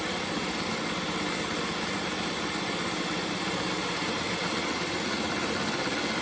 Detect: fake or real real